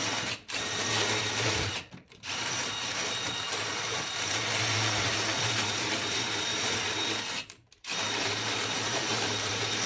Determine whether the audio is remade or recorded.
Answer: remade